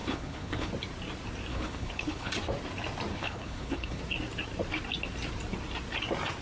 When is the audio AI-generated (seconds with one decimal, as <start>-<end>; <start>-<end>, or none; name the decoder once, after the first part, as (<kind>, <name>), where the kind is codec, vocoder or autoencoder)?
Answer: 0.0-0.7 (codec, HILCodec); 1.5-2.3; 3.1-4.0